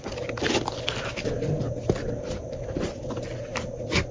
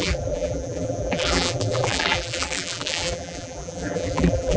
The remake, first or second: second